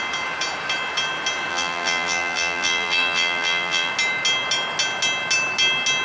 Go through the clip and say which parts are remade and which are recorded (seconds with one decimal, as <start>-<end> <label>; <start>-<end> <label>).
0.0-1.5 recorded; 1.5-3.9 remade; 3.9-6.0 recorded